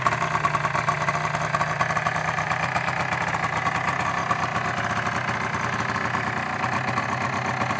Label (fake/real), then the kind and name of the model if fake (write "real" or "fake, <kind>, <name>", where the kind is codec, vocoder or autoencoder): real